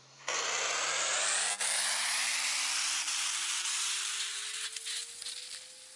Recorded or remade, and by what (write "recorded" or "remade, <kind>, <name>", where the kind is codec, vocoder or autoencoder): recorded